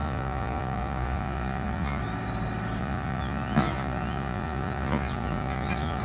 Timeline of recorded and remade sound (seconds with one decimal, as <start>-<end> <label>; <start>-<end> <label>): 0.0-2.0 remade; 2.0-2.8 recorded; 2.8-6.0 remade